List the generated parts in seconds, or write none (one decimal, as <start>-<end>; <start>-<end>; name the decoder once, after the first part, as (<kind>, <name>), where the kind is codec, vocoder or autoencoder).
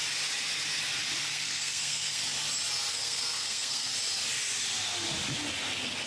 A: 1.2-2.2 (codec, SNAC); 2.9-3.9